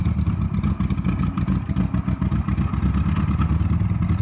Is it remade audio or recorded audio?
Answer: recorded